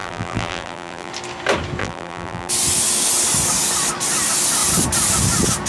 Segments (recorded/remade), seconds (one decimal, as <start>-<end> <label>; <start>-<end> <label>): 0.0-1.1 remade; 1.1-1.8 recorded; 1.8-2.5 remade; 2.5-5.7 recorded